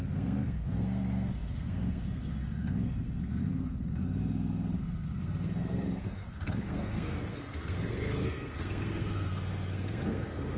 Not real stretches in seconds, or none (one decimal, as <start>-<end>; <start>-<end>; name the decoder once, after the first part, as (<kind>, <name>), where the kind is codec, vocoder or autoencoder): 0.0-10.6 (codec, SNAC)